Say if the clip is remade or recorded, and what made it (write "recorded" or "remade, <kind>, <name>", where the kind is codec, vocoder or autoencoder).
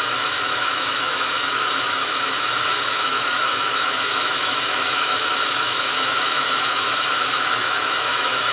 remade, autoencoder, DAC-VAE